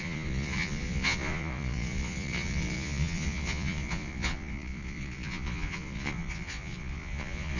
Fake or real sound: fake